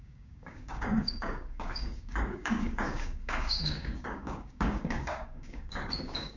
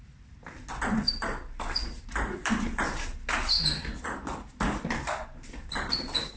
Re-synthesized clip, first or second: first